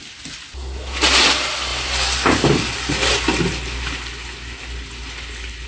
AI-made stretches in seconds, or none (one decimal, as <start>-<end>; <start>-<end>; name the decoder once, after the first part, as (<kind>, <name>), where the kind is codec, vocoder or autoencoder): none